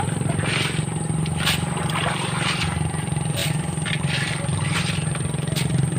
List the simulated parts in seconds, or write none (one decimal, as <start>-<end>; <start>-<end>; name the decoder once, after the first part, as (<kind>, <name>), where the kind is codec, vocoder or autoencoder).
none